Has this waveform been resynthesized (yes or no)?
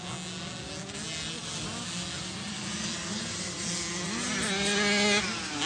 no